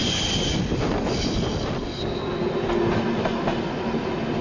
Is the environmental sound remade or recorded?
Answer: recorded